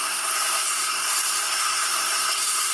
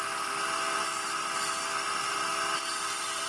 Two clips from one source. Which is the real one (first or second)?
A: second